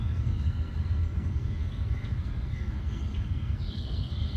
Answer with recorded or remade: remade